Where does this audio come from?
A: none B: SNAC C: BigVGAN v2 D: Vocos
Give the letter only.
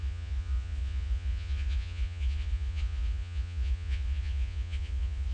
D